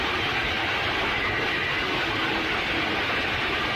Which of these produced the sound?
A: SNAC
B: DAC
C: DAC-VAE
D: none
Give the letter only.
D